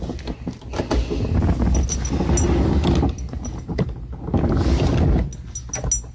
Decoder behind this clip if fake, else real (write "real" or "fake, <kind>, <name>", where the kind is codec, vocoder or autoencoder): real